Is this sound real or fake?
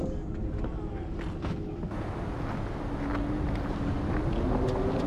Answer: real